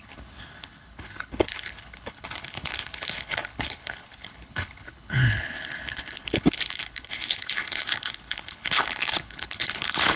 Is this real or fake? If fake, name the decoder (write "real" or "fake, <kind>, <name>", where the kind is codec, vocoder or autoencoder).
fake, codec, HILCodec